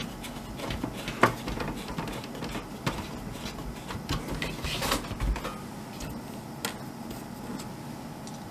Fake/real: real